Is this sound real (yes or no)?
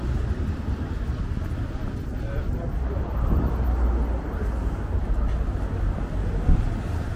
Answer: yes